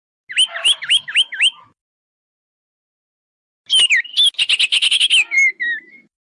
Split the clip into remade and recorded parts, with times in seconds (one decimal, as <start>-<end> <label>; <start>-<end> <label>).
0.0-0.6 recorded; 0.6-2.4 remade; 2.4-4.7 recorded; 4.7-6.3 remade